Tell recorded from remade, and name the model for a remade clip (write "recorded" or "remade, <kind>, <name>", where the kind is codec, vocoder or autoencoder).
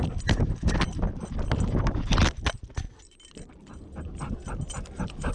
recorded